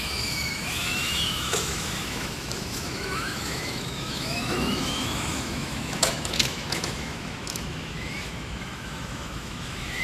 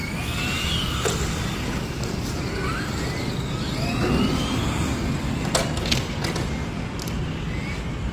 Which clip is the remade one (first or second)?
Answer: first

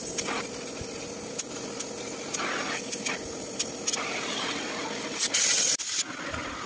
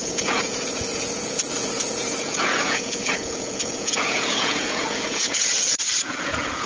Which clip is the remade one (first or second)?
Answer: second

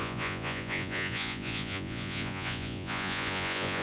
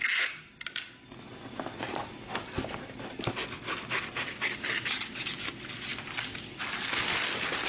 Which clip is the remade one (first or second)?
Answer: first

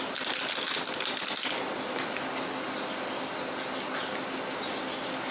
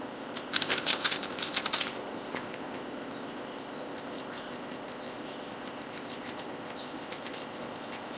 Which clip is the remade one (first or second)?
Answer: second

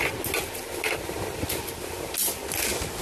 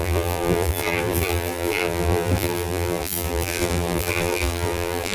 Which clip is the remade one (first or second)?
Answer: second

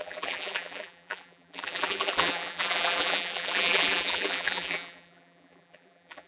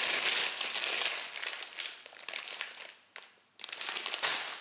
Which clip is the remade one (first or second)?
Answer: first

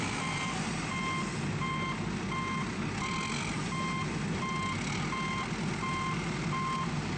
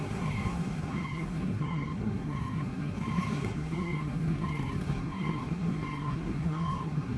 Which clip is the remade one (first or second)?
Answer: second